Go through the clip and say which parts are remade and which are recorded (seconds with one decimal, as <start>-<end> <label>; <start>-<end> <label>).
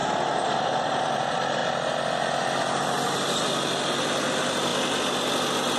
0.0-5.8 recorded